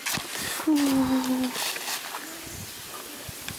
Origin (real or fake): real